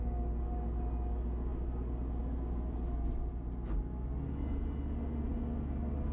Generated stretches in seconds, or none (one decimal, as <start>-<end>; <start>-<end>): none